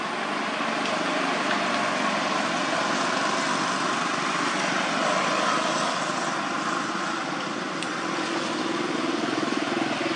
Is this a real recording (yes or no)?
yes